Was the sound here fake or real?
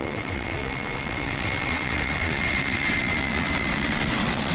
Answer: fake